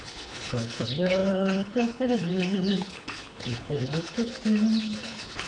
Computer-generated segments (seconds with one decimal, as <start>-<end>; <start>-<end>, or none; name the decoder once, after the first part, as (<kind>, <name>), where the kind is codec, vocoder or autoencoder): 0.0-4.3 (codec, HILCodec); 4.8-5.5